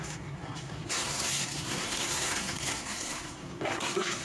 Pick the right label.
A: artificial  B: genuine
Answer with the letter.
A